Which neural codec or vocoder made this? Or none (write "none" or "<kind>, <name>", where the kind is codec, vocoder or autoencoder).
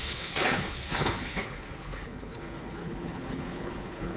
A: codec, HILCodec